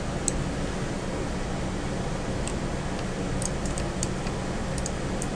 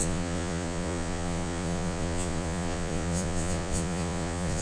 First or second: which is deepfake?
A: second